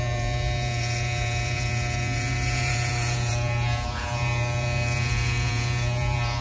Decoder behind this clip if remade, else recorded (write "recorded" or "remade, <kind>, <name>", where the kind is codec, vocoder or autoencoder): remade, vocoder, Vocos